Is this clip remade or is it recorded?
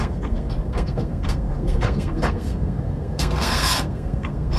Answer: remade